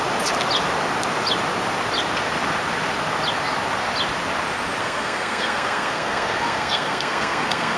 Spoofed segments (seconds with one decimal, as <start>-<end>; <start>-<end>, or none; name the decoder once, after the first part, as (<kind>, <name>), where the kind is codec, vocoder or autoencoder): 4.8-7.8 (codec, SNAC)